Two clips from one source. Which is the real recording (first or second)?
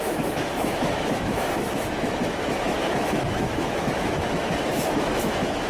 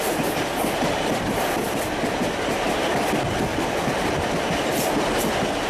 second